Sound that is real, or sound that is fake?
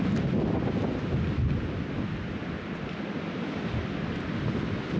real